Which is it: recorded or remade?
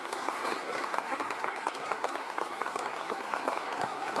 remade